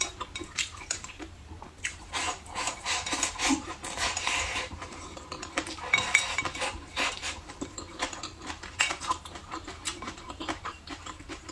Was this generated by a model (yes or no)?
yes